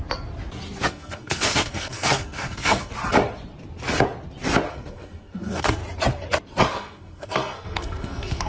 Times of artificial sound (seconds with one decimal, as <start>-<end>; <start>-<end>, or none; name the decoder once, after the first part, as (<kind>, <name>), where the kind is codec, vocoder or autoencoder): 0.9-2.9 (codec, SNAC); 4.7-5.8; 6.7-8.5